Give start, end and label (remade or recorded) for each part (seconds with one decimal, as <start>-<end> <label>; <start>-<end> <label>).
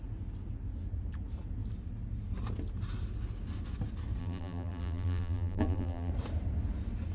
0.0-4.2 recorded; 4.2-6.1 remade; 6.1-7.1 recorded